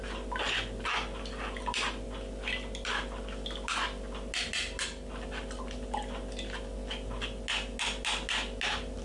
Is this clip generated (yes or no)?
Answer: no